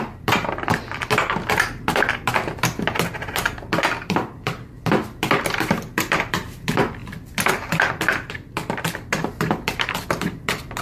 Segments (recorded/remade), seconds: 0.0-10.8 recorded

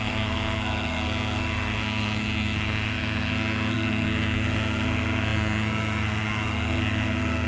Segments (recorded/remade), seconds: 0.0-7.5 remade

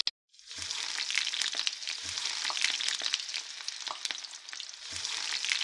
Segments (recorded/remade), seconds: 0.0-5.6 recorded

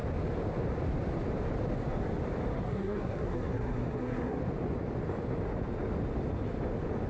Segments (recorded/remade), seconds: 0.0-2.5 recorded; 2.5-4.4 remade; 4.4-7.1 recorded

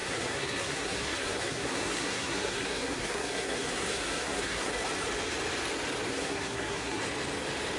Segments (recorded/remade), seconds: 0.0-4.7 remade; 4.7-6.1 recorded; 6.1-7.0 remade; 7.0-7.8 recorded